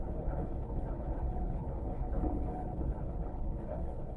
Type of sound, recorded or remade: remade